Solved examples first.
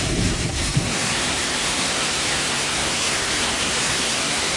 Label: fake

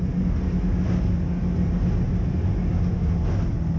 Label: real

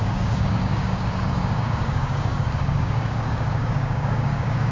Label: fake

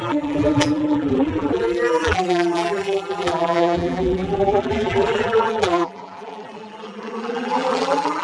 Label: fake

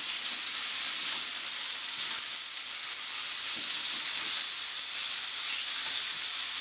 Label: real